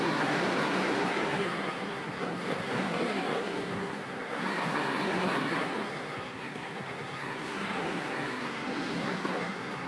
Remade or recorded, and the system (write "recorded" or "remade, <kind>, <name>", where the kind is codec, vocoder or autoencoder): remade, codec, SNAC